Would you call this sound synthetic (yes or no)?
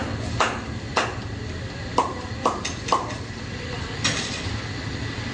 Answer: no